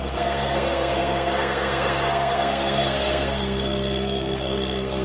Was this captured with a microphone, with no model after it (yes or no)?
no